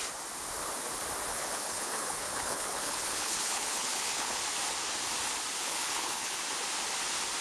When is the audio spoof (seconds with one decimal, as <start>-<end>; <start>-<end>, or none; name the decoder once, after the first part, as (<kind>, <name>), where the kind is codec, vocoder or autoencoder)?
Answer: 1.3-4.4 (codec, HILCodec); 5.6-6.4